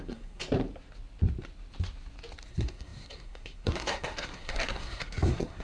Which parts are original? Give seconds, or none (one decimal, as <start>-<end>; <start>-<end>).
0.4-2.5